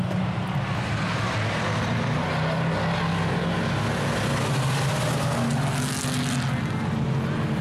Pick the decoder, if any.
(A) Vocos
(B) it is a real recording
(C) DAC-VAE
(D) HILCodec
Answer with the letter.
B